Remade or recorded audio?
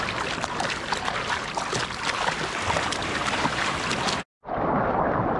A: recorded